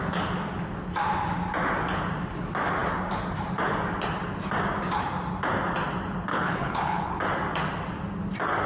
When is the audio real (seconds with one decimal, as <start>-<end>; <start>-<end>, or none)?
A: 0.0-6.3; 7.2-8.7